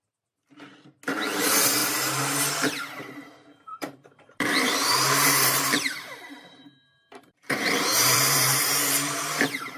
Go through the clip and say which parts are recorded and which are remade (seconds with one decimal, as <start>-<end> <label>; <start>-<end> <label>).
0.0-3.7 recorded; 3.7-8.9 remade; 8.9-9.8 recorded